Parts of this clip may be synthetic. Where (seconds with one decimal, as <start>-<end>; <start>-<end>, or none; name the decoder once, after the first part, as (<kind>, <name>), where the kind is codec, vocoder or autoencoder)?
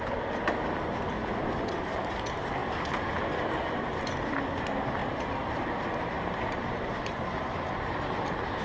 5.0-7.5 (vocoder, BigVGAN v2)